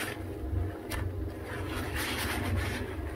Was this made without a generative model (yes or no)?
yes